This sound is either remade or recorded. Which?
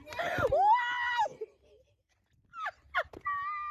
recorded